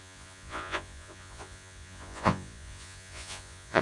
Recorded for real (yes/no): no